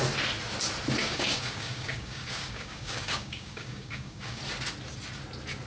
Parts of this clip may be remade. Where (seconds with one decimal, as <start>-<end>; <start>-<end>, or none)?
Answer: 1.0-4.4